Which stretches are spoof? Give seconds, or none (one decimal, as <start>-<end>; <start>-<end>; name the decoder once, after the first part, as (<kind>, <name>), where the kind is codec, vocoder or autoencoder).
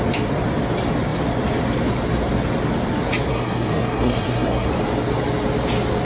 3.3-4.7 (codec, SNAC)